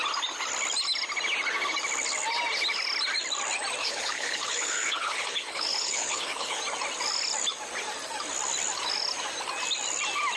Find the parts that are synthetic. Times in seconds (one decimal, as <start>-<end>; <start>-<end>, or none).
3.8-6.6